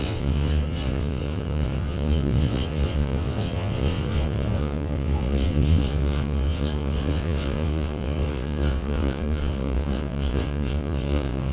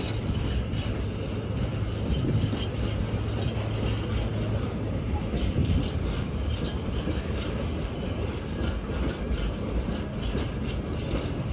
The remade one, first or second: first